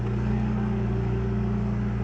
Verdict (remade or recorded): remade